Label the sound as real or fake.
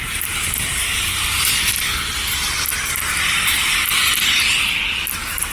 real